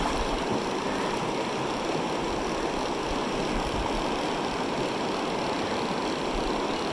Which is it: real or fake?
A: real